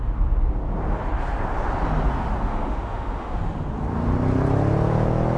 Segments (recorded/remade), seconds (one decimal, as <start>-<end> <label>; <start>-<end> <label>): 0.0-2.5 recorded; 2.5-3.4 remade; 3.4-5.4 recorded